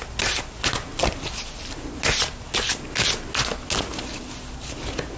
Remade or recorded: recorded